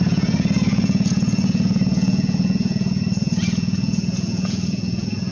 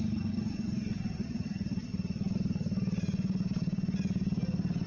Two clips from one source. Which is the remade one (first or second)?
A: first